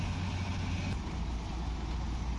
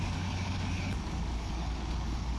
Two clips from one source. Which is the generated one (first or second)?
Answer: second